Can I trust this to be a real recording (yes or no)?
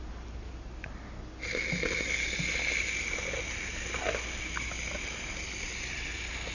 yes